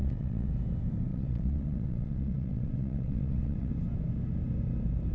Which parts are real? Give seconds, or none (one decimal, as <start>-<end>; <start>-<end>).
0.5-1.1; 3.7-5.1